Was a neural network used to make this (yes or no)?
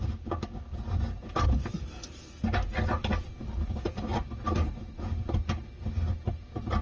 no